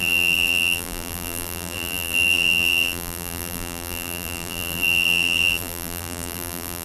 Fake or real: fake